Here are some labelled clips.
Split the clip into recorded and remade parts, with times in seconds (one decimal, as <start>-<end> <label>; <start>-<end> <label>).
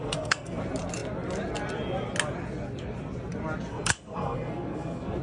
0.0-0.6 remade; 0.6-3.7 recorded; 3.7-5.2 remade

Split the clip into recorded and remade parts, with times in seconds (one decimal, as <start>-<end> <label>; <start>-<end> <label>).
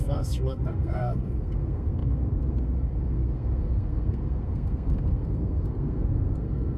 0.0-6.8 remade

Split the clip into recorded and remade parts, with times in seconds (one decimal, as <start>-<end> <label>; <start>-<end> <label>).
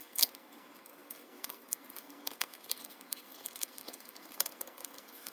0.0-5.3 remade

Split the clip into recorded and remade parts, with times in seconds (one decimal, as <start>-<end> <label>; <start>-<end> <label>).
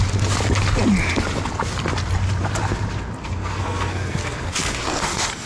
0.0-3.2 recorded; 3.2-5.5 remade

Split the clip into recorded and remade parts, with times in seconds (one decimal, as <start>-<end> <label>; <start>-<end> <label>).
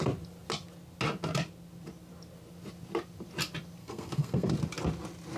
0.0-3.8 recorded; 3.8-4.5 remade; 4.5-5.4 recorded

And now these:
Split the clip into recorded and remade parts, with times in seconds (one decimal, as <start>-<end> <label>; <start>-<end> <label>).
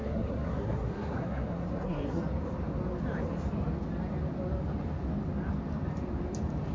0.0-2.2 remade; 2.2-6.7 recorded